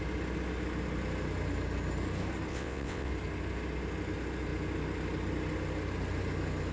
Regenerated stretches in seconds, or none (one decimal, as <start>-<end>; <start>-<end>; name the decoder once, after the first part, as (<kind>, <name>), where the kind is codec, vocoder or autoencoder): 2.5-3.1 (vocoder, WaveNeXt)